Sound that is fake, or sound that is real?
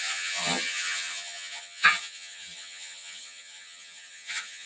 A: fake